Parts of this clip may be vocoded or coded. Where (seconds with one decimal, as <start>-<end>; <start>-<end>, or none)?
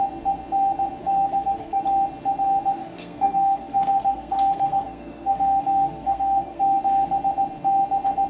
1.0-1.8; 2.8-6.8